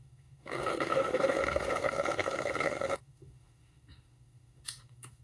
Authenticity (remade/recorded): remade